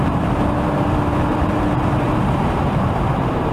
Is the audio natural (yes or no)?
no